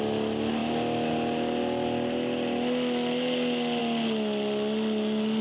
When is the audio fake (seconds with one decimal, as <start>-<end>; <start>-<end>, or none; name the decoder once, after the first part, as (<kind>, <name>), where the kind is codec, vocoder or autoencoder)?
none